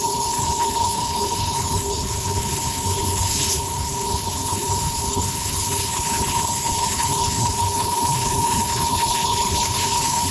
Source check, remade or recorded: remade